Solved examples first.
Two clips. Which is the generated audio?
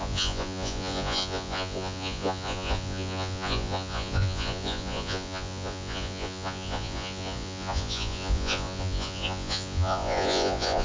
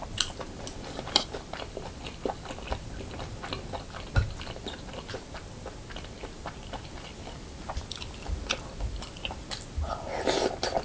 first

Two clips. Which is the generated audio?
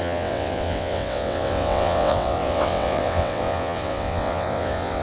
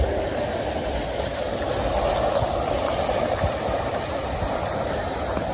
first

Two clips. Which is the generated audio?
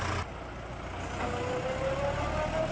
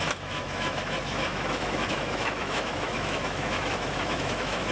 second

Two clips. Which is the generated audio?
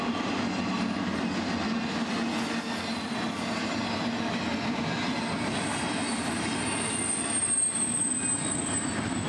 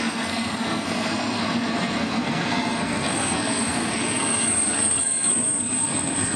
second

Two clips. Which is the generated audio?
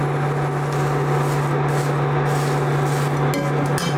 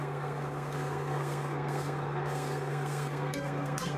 second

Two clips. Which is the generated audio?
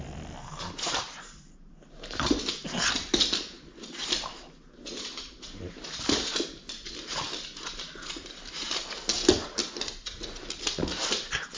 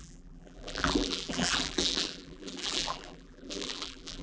second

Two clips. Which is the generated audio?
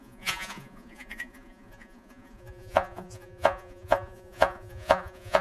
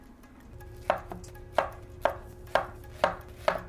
first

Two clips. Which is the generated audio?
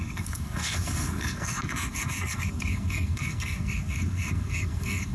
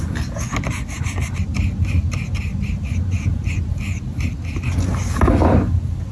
first